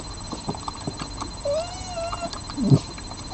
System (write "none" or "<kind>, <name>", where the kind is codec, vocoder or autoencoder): none